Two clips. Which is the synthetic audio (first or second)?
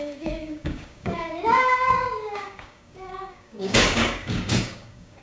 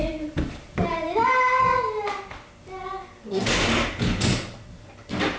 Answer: first